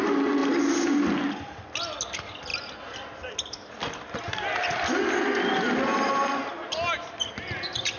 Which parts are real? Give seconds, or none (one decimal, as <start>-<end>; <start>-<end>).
0.0-8.0